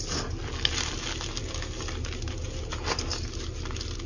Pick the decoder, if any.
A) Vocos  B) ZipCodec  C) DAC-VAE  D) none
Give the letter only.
D